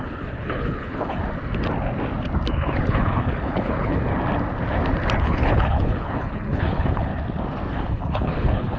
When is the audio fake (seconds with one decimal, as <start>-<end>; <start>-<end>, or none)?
0.0-1.2; 2.9-4.1; 5.2-7.1; 7.7-8.8